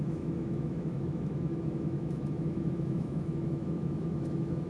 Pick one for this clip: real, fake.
fake